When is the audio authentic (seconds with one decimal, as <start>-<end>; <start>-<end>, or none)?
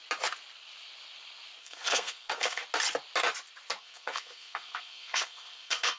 0.0-1.6; 2.6-3.8